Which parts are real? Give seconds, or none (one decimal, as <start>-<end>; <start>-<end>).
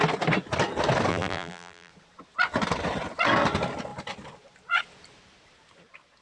0.0-1.1; 1.9-6.2